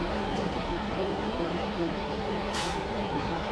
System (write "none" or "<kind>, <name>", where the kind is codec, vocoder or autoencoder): codec, SNAC